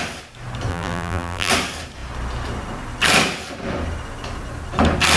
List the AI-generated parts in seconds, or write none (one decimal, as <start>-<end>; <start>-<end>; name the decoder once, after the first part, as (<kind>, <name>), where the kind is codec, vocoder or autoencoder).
0.7-1.5 (vocoder, BigVGAN v2)